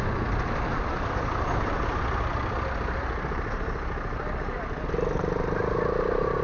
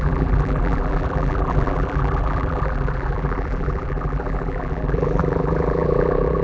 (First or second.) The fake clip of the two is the second